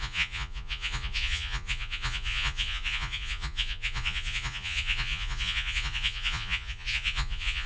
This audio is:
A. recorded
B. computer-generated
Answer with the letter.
B